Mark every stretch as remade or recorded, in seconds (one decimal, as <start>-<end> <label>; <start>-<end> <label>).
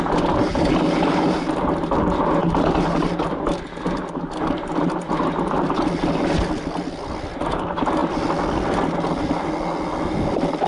0.0-10.7 recorded